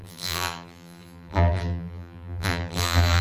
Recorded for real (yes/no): no